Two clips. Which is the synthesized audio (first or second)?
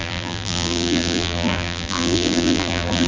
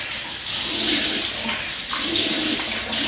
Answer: first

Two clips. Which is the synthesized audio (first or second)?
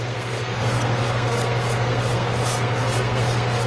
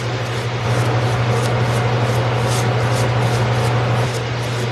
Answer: first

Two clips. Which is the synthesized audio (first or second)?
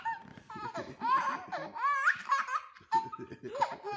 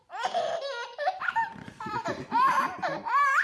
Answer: second